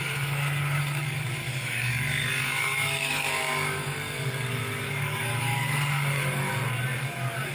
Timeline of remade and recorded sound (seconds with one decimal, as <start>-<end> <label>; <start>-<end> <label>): 0.0-6.5 remade; 6.5-7.0 recorded; 7.0-7.5 remade